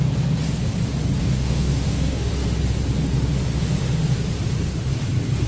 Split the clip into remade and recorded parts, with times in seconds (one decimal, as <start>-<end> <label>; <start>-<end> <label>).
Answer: 0.0-1.2 recorded; 1.2-2.3 remade; 2.3-5.5 recorded